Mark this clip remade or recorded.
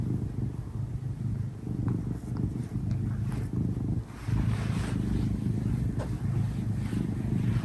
recorded